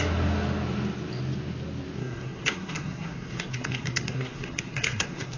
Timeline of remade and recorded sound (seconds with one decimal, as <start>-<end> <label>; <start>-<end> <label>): 0.0-2.0 recorded; 2.0-5.4 remade